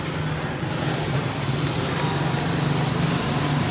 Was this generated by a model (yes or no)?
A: no